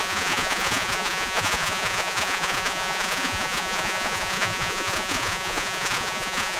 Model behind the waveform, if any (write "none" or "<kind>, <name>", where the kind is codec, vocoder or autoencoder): vocoder, Vocos